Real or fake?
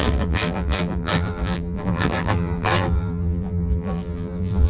fake